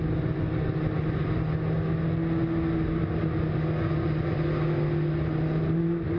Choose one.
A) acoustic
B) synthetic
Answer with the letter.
A